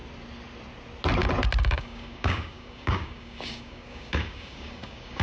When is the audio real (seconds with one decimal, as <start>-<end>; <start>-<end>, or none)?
0.0-1.6